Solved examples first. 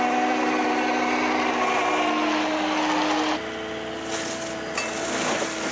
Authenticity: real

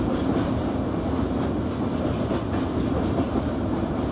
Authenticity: real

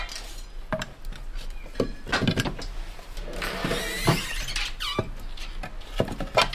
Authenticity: real